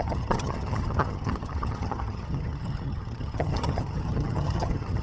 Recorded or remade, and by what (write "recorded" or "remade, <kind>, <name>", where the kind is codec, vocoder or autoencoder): remade, vocoder, HiFi-GAN